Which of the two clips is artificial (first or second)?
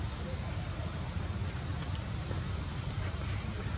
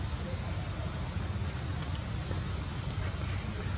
first